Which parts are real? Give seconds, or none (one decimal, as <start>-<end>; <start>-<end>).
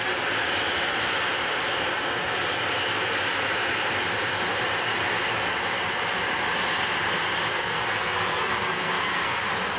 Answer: 0.0-7.5; 9.4-9.8